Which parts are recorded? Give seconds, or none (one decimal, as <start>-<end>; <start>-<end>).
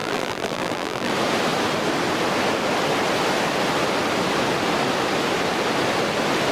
1.1-6.5